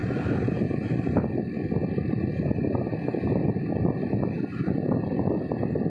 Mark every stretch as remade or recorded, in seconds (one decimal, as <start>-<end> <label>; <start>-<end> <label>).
0.0-5.9 recorded